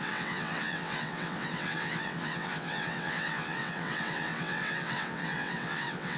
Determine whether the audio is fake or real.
fake